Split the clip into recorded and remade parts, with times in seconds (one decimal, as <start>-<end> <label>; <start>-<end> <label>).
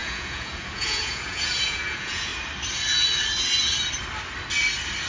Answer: 0.0-2.3 remade; 2.3-5.1 recorded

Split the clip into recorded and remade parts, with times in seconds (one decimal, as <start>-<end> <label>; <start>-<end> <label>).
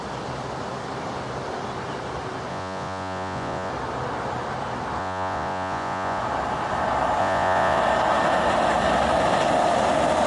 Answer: 0.0-2.5 recorded; 2.5-3.7 remade; 3.7-5.0 recorded; 5.0-6.2 remade; 6.2-7.2 recorded; 7.2-7.8 remade; 7.8-10.3 recorded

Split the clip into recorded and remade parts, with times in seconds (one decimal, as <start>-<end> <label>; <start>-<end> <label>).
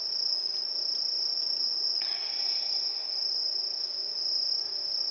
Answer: 0.0-1.3 recorded; 1.3-2.4 remade; 2.4-5.1 recorded